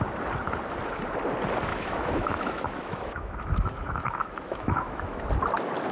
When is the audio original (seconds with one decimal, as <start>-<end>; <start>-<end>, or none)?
0.0-1.7; 5.2-5.9